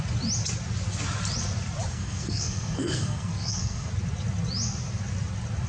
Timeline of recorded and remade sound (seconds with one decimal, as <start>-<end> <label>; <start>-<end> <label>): 0.0-1.9 recorded; 1.9-3.9 remade; 3.9-5.7 recorded